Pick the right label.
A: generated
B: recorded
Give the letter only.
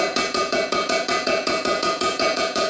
A